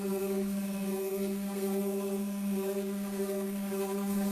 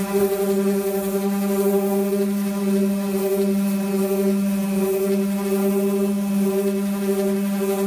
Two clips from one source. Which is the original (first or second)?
second